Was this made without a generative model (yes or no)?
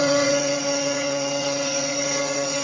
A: no